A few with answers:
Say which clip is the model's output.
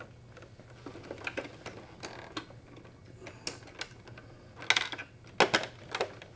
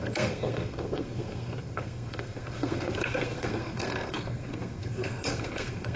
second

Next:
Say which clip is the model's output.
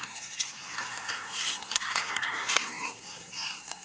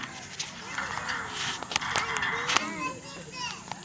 first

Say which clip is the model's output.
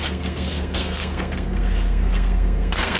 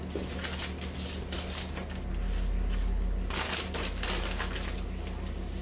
first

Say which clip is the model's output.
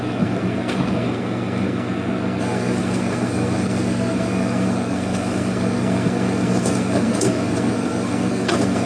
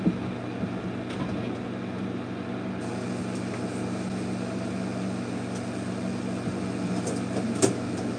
first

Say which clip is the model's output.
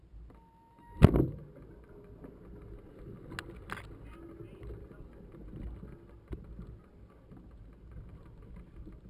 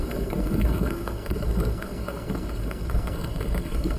second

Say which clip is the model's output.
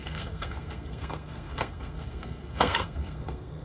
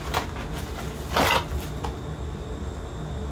first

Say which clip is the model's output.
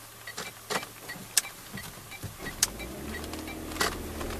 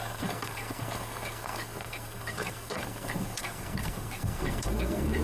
second